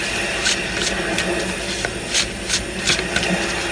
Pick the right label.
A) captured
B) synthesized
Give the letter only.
A